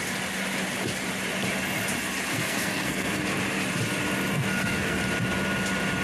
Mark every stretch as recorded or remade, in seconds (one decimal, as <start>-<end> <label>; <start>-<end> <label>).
0.0-2.3 recorded; 2.3-3.2 remade; 3.2-4.3 recorded; 4.3-5.0 remade; 5.0-6.0 recorded